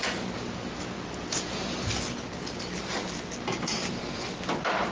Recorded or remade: recorded